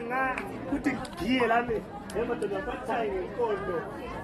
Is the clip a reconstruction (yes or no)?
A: no